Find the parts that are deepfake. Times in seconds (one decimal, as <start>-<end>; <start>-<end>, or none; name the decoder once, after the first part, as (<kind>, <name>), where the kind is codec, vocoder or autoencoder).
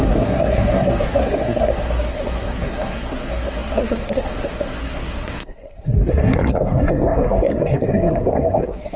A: 0.0-9.0 (codec, SNAC)